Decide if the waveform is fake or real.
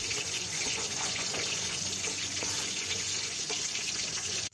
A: fake